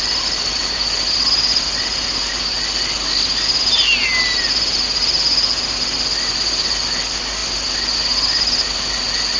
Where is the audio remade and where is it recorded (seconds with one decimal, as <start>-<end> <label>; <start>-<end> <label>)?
0.0-9.4 recorded